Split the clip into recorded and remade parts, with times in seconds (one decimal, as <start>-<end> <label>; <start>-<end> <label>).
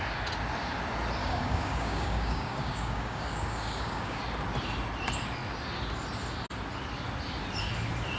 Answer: 0.0-1.2 recorded; 1.2-4.2 remade; 4.2-8.2 recorded